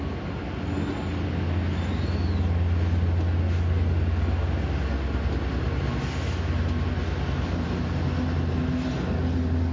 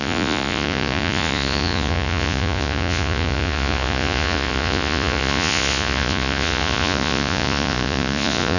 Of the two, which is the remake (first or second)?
second